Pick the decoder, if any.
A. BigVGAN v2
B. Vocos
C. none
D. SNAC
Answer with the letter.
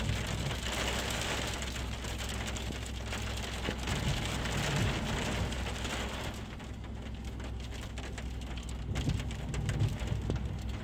C